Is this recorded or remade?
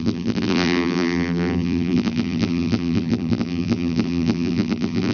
remade